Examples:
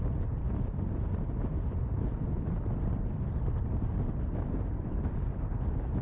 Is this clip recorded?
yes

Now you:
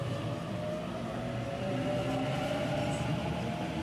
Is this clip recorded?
yes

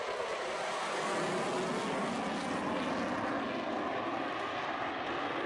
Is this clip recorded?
yes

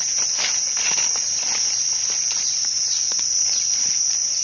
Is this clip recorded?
yes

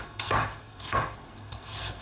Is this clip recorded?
no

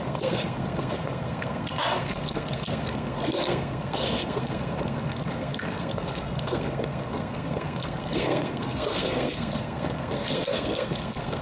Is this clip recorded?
no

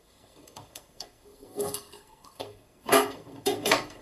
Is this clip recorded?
no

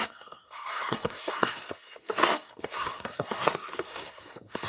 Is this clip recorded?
no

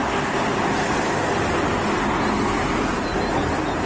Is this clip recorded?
yes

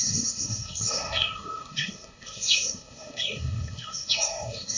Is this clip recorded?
no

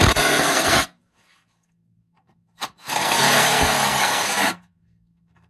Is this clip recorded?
no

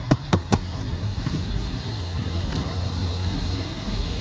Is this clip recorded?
no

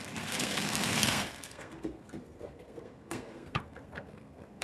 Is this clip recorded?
no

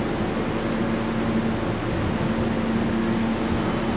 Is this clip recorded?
yes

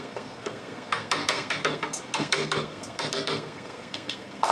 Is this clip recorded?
no